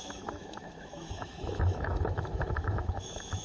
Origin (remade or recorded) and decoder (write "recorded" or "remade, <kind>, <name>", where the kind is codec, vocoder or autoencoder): remade, autoencoder, DAC-VAE